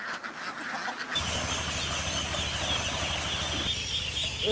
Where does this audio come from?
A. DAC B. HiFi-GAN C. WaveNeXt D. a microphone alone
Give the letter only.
D